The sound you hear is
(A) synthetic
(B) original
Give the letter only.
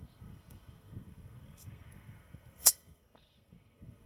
A